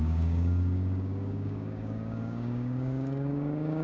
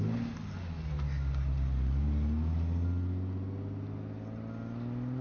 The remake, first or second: first